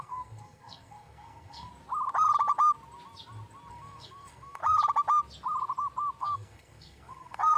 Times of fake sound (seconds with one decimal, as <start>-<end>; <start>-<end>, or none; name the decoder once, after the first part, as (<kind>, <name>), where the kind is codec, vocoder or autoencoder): 0.0-1.7 (codec, SNAC); 3.7-4.6; 6.2-7.6